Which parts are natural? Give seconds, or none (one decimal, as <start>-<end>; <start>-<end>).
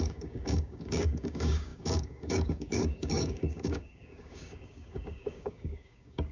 none